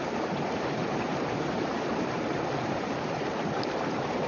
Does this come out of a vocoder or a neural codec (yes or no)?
yes